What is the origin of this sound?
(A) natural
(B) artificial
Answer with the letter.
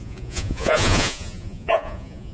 B